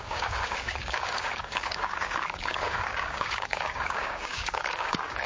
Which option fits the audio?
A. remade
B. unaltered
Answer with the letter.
A